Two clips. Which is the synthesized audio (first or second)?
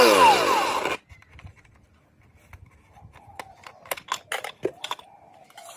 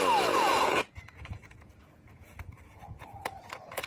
second